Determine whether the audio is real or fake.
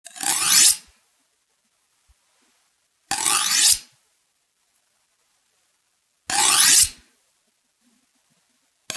real